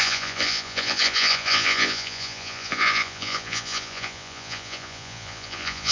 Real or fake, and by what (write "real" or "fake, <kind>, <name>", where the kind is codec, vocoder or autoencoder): fake, vocoder, Vocos